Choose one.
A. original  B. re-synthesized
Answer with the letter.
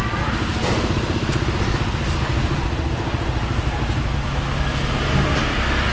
A